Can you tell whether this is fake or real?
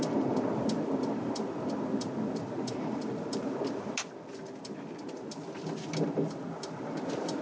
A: real